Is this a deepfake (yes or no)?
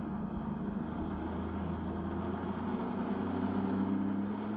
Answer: no